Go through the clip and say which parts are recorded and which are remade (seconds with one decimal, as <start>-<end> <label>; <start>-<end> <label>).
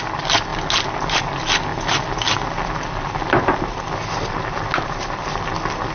0.0-5.9 recorded